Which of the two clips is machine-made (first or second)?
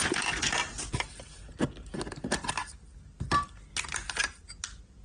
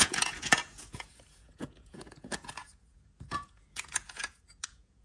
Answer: second